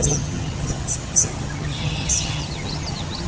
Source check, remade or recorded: remade